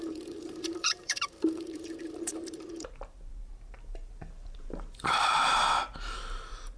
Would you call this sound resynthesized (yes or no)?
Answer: yes